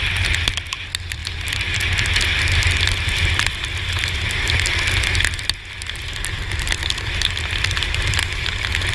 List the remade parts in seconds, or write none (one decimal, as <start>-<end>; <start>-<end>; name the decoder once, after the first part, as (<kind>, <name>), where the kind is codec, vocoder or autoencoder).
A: none